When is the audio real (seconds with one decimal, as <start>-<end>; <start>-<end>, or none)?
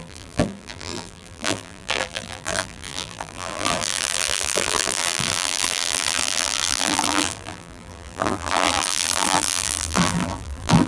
none